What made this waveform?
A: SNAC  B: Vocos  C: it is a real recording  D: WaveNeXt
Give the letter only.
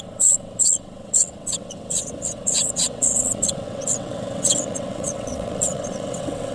D